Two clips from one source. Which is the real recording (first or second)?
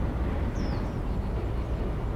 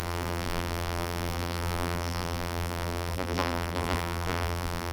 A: first